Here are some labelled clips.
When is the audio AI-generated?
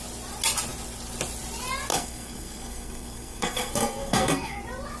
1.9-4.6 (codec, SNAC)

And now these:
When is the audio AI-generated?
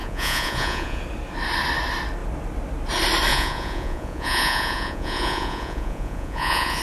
0.0-1.0 (vocoder, Vocos); 3.3-6.8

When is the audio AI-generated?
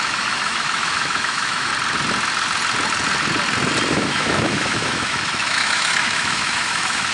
0.0-1.7 (autoencoder, DAC-VAE); 3.9-7.1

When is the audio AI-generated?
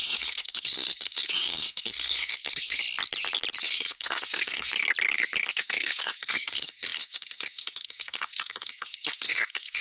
0.0-2.8 (codec, SNAC); 3.6-4.7; 5.5-9.8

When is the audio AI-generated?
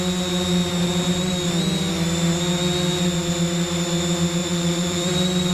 4.4-5.5 (vocoder, BigVGAN v2)